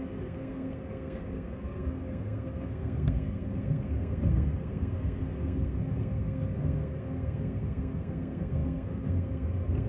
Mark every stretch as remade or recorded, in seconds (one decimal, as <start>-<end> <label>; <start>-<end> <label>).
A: 0.0-9.9 remade